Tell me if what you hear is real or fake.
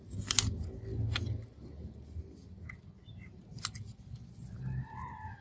real